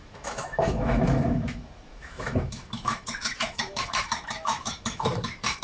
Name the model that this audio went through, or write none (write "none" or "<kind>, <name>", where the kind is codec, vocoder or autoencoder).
autoencoder, DAC-VAE